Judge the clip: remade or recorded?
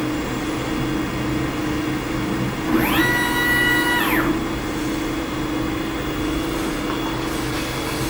recorded